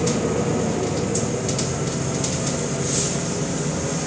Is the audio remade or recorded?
recorded